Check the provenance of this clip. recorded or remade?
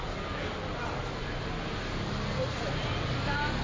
recorded